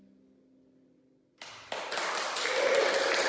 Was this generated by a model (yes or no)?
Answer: no